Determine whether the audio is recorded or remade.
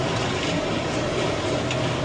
recorded